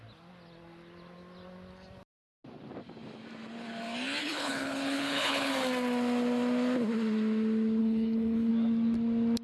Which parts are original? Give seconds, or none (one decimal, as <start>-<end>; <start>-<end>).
0.0-4.2; 5.5-7.8; 8.5-9.4